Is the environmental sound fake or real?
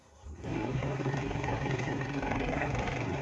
fake